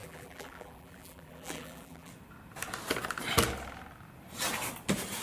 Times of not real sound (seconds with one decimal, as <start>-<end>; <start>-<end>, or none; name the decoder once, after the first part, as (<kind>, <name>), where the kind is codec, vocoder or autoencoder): 0.0-2.1 (vocoder, BigVGAN v2)